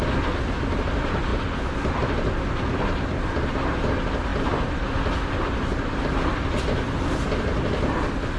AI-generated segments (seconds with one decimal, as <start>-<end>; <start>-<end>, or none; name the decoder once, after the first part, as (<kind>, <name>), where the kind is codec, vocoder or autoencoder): 4.3-8.4 (vocoder, BigVGAN v2)